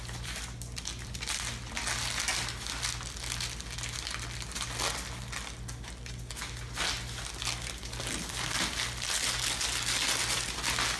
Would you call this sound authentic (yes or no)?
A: yes